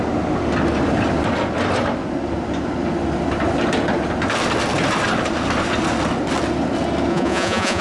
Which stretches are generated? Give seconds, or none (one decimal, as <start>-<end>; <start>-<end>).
7.1-7.8